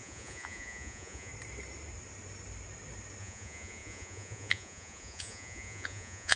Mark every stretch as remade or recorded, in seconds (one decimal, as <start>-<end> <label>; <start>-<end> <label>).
0.0-1.3 remade; 1.3-3.2 recorded; 3.2-6.4 remade